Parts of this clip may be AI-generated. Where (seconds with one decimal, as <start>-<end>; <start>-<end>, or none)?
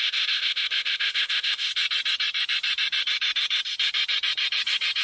0.0-1.7